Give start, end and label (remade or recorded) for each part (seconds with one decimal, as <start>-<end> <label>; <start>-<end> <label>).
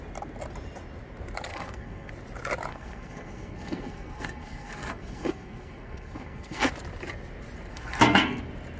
0.0-1.5 recorded; 1.5-2.1 remade; 2.1-2.7 recorded; 2.7-6.7 remade; 6.7-7.7 recorded; 7.7-8.4 remade; 8.4-8.8 recorded